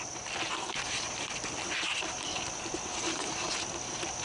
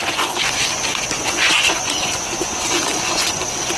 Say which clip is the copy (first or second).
second